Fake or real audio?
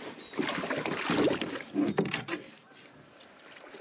real